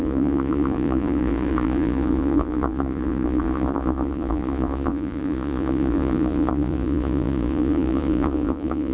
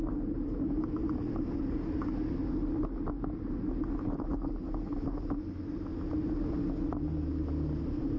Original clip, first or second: second